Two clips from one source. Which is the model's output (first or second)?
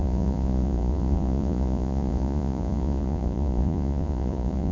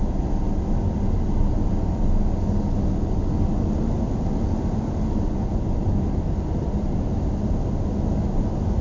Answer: first